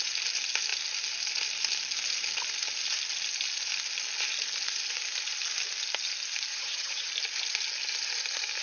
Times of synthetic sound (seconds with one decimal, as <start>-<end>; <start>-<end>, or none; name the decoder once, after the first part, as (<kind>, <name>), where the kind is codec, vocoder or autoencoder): 6.5-7.1 (vocoder, HiFi-GAN)